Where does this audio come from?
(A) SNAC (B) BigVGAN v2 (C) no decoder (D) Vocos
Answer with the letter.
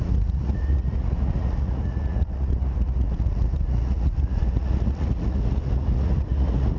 D